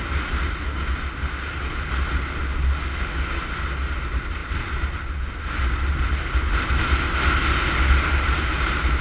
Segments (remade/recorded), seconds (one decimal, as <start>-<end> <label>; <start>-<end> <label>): 0.0-9.0 recorded